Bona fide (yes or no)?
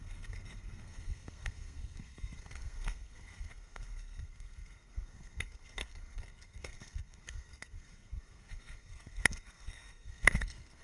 no